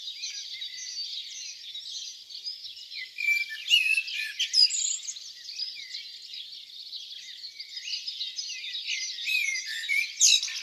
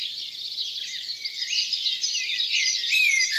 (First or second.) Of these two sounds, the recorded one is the first